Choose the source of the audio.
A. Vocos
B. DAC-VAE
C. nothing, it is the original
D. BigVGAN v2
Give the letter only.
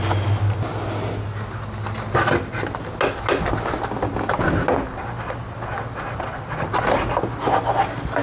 C